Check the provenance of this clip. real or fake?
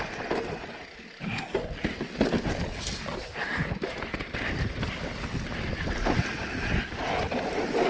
real